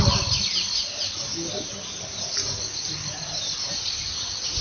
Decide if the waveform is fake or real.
real